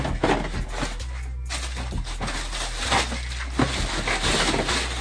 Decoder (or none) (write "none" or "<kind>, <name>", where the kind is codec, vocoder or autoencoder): none